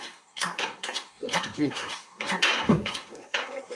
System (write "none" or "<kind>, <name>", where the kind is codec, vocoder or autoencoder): codec, SNAC